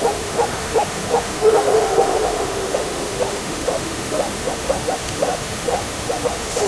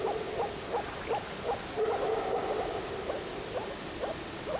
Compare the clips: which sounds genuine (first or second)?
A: second